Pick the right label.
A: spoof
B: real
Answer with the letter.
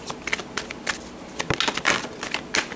B